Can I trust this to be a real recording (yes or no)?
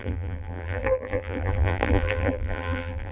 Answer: no